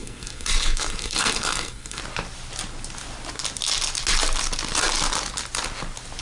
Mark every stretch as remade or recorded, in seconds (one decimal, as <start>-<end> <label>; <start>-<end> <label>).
0.0-2.0 remade; 2.0-6.2 recorded